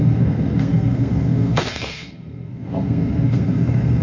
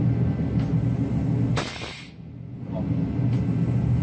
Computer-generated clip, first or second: first